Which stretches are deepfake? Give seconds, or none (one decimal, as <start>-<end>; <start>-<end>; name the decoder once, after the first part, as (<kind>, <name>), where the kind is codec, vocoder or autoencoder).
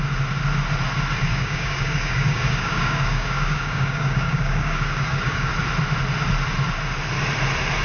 1.3-5.5 (codec, DAC)